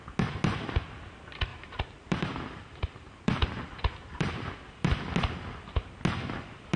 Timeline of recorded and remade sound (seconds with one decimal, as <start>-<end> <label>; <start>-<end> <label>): 0.0-1.5 recorded; 1.5-4.4 remade; 4.4-6.8 recorded